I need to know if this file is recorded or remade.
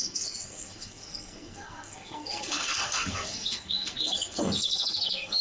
remade